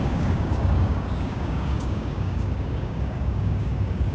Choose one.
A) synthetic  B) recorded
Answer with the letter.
A